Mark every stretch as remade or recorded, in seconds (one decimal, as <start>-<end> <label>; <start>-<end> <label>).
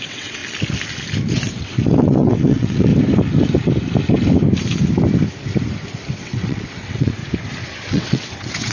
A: 0.0-0.4 remade; 0.4-1.5 recorded; 1.5-2.9 remade; 2.9-6.1 recorded; 6.1-7.2 remade; 7.2-7.9 recorded; 7.9-8.7 remade